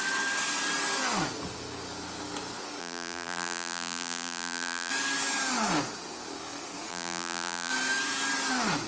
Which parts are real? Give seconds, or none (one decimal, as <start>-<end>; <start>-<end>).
0.0-2.8; 4.9-6.9; 7.7-8.9